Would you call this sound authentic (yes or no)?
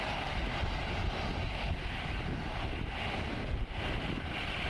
yes